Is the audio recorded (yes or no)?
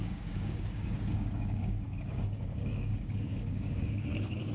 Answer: no